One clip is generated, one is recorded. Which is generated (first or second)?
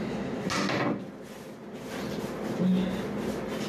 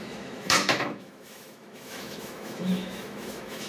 second